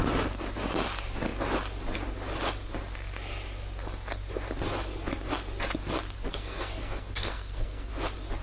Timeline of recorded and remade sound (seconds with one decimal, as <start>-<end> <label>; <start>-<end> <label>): 0.0-6.3 recorded; 6.3-7.9 remade; 7.9-8.4 recorded

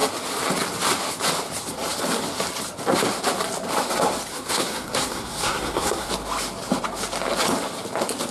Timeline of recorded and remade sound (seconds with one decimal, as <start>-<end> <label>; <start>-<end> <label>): 0.0-4.3 recorded; 4.3-6.1 remade; 6.1-8.3 recorded

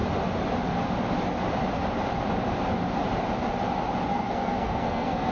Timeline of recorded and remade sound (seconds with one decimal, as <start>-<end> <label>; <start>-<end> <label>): 0.0-4.1 recorded; 4.1-5.3 remade